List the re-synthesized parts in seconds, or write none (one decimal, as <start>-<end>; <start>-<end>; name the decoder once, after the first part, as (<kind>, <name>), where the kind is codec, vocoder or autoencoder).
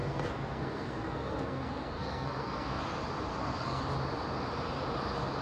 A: 0.0-2.8 (codec, SNAC); 3.3-3.8